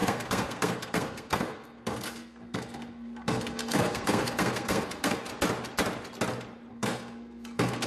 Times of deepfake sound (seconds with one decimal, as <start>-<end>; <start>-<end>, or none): 0.0-5.3; 6.7-7.9